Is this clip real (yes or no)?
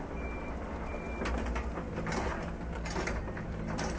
no